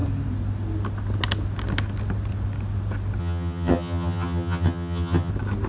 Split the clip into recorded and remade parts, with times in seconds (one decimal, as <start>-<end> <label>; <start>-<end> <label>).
0.0-3.2 recorded; 3.2-5.3 remade; 5.3-5.7 recorded